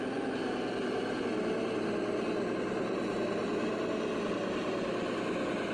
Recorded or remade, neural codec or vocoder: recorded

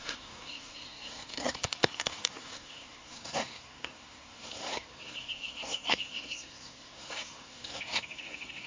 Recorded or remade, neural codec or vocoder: remade, codec, SNAC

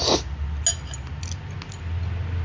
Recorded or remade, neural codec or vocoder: recorded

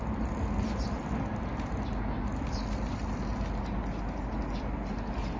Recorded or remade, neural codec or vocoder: recorded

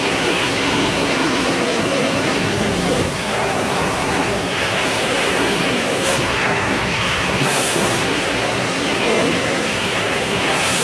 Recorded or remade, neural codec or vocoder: remade, codec, SNAC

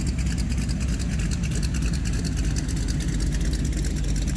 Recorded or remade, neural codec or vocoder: recorded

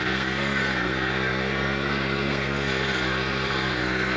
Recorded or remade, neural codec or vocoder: remade, codec, SNAC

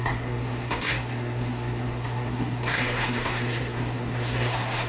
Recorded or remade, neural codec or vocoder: remade, codec, SNAC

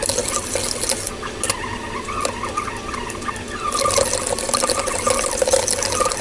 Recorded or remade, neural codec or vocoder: recorded